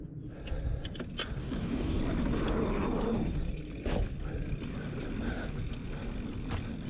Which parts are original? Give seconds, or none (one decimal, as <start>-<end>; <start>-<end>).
0.0-1.4; 2.0-6.9